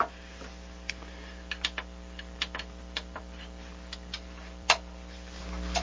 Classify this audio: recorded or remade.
remade